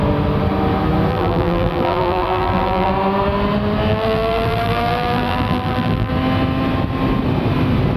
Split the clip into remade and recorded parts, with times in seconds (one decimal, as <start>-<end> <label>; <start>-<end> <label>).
0.0-1.1 recorded; 1.1-2.9 remade; 2.9-3.9 recorded; 3.9-6.1 remade; 6.1-8.0 recorded